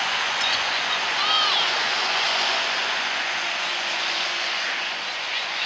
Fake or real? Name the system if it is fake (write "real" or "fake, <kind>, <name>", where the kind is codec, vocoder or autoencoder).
fake, vocoder, Vocos